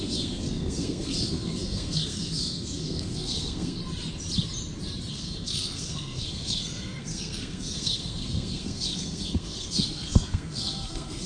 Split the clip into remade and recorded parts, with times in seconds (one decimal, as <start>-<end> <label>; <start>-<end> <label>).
0.0-3.8 remade; 3.8-5.1 recorded; 5.1-11.3 remade